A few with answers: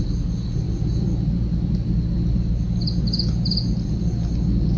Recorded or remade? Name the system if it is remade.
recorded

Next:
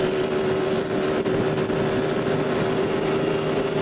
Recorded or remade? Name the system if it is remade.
recorded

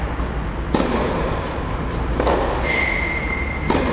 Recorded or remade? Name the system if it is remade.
recorded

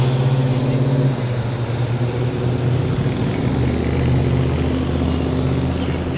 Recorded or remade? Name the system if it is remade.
recorded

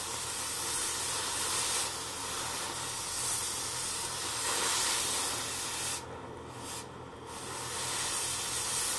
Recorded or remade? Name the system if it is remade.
recorded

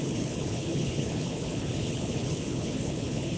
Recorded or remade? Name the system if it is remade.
remade, codec, HILCodec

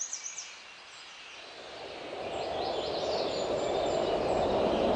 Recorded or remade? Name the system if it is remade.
recorded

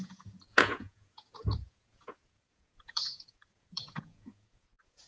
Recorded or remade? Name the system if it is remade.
remade, vocoder, Vocos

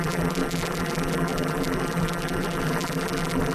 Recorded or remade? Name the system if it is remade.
remade, vocoder, BigVGAN v2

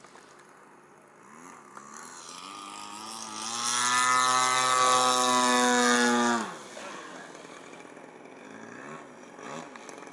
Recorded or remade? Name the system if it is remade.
recorded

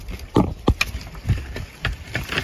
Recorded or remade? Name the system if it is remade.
recorded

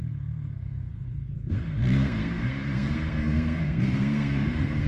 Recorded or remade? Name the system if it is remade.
remade, codec, SNAC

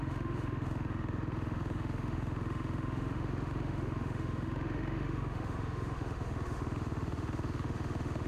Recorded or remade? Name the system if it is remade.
remade, autoencoder, DAC-VAE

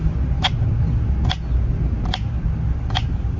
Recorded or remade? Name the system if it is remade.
recorded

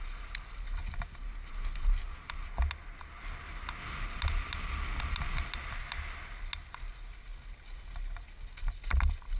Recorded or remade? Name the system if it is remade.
recorded